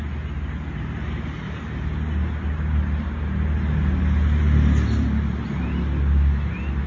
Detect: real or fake real